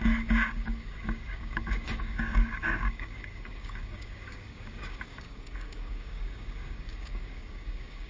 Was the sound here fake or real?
fake